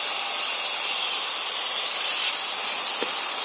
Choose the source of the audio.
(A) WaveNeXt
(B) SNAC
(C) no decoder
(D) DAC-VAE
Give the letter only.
C